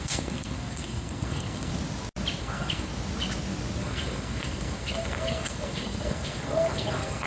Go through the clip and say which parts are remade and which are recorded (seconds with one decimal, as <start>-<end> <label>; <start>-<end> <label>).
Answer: 0.0-1.7 remade; 1.7-2.4 recorded; 2.4-2.9 remade; 2.9-3.8 recorded; 3.8-7.3 remade